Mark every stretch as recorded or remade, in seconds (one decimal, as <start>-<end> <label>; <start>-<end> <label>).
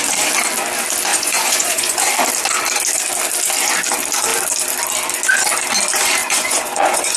0.0-1.1 recorded; 1.1-2.0 remade; 2.0-6.2 recorded; 6.2-7.2 remade